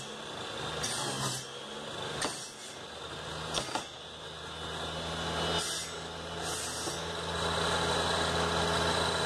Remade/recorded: recorded